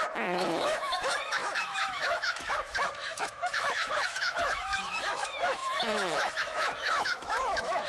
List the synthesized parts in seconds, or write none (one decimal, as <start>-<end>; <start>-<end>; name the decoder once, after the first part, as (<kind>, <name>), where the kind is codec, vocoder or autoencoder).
0.0-7.9 (autoencoder, DAC-VAE)